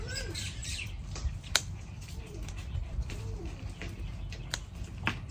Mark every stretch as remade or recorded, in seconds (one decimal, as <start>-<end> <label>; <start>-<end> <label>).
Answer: 0.0-0.6 recorded; 0.6-3.8 remade; 3.8-5.3 recorded